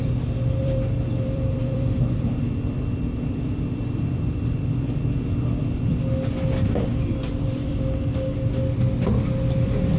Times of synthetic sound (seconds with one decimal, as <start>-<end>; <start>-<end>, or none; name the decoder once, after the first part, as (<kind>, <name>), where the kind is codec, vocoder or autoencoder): 0.6-5.0 (vocoder, BigVGAN v2); 6.9-7.7